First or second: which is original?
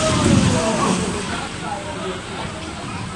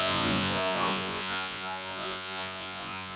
first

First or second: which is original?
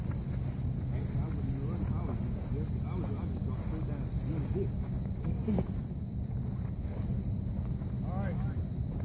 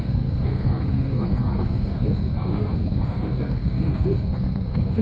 first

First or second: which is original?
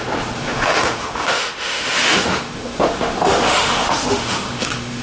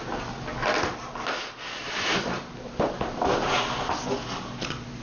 second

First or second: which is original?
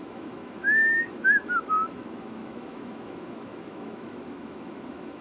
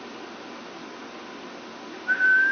second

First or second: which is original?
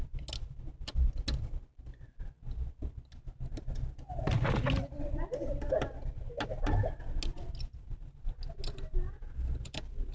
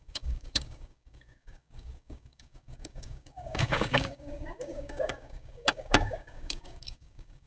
first